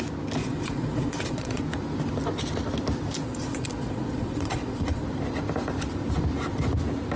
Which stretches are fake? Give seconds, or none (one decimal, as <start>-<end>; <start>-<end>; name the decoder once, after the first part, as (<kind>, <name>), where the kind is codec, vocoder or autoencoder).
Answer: 0.4-1.6 (vocoder, Vocos); 3.2-5.0

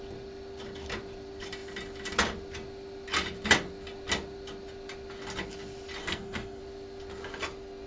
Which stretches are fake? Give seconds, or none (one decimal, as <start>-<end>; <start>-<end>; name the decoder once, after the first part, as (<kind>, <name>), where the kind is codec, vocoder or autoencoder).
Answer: 6.0-6.6 (codec, SNAC)

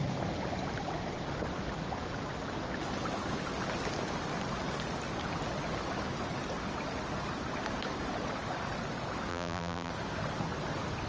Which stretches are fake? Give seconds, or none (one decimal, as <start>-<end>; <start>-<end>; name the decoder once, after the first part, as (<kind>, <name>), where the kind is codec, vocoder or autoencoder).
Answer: 9.3-9.9 (vocoder, BigVGAN v2)

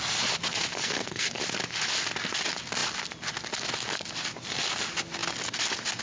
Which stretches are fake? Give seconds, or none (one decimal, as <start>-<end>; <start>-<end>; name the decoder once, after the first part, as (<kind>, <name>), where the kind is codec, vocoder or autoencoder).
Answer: 0.7-1.4 (codec, SNAC)

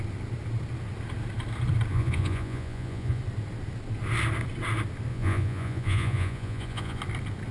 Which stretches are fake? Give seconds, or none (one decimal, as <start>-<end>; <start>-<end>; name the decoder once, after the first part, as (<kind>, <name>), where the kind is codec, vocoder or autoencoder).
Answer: 1.9-3.2 (vocoder, Vocos); 5.1-7.0

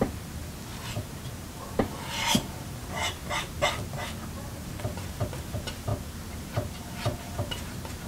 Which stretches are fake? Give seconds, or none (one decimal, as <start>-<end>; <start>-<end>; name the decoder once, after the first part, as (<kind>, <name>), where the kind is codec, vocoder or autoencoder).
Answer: 0.0-0.4 (vocoder, BigVGAN v2); 1.0-3.5; 4.8-8.1

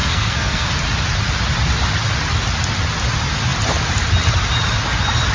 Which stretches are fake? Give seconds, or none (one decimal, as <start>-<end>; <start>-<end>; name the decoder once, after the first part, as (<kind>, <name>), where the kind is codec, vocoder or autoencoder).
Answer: 0.0-0.7 (codec, SNAC)